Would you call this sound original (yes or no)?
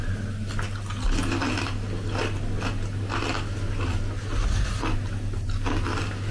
yes